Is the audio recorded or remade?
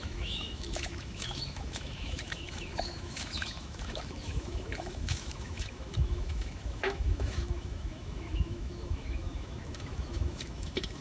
remade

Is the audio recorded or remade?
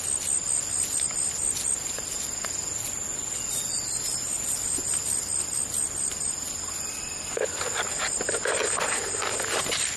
recorded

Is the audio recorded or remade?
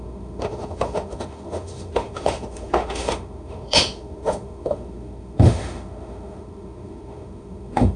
remade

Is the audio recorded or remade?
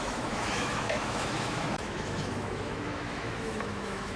remade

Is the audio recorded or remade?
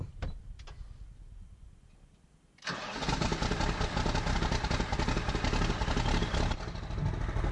recorded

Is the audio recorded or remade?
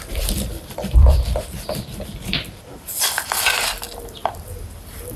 recorded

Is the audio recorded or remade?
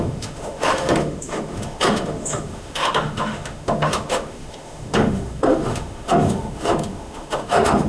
remade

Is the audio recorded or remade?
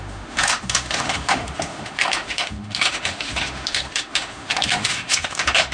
remade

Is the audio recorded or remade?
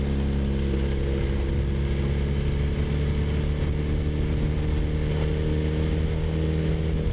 recorded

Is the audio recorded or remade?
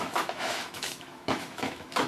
remade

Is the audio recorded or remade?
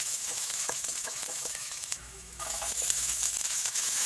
remade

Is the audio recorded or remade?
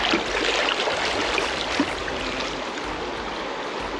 recorded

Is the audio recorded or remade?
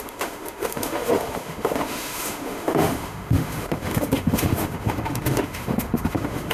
remade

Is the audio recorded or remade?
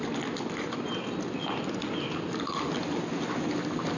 recorded